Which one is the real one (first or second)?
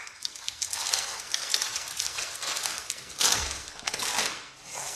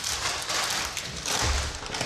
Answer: second